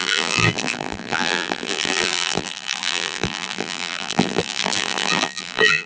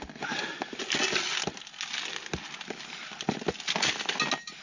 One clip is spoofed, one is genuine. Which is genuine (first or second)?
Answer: second